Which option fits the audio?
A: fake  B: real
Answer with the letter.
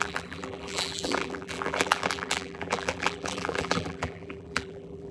A